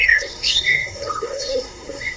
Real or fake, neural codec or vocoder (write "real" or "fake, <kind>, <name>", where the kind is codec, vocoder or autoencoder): fake, codec, SNAC